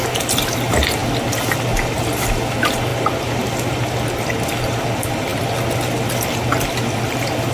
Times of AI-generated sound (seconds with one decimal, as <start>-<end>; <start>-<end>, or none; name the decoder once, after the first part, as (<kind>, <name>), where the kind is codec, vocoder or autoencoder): none